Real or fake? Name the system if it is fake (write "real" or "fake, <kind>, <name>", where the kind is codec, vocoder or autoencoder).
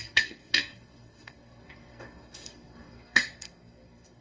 fake, codec, SNAC